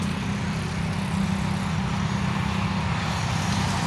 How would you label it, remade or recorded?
recorded